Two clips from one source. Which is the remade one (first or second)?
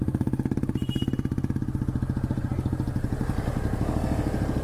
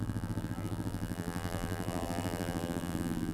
second